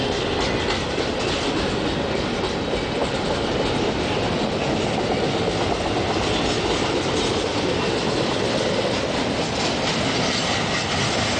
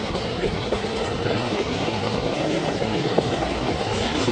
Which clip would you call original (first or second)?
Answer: first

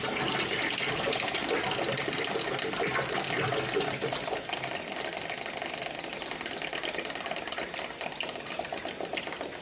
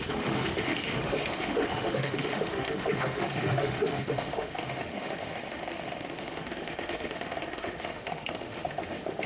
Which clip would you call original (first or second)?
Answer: first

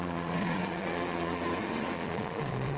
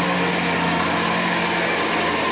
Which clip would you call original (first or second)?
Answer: second